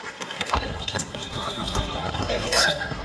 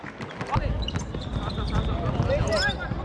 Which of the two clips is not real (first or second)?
first